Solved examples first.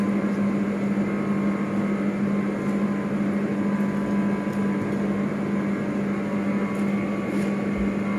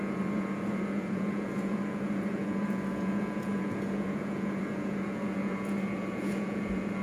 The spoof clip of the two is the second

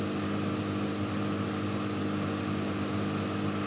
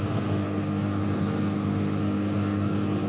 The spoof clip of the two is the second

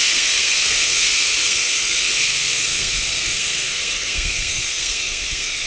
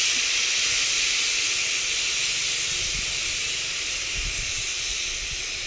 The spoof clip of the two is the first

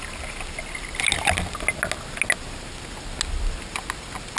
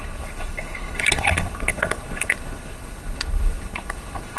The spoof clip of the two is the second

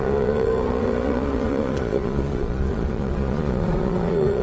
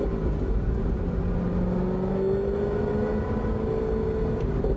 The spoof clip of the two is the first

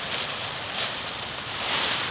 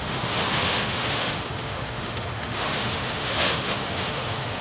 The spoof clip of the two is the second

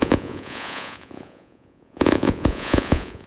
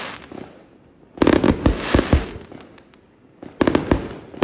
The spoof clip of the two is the first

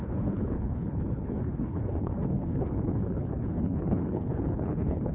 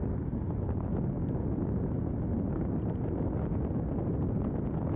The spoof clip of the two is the first